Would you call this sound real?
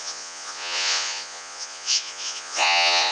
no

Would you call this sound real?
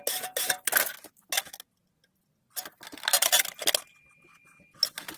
yes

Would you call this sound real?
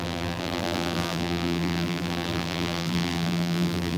no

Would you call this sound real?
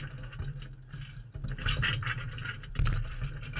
no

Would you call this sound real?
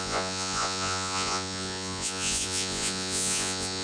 no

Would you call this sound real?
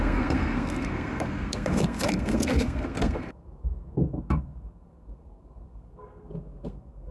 no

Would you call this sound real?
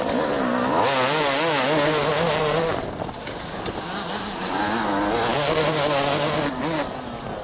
yes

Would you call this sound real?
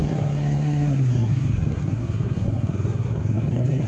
no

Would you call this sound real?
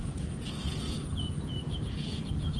no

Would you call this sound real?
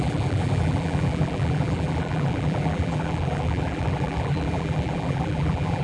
no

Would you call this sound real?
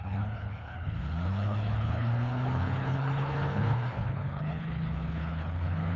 no